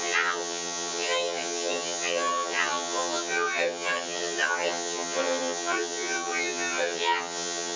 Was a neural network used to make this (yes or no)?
yes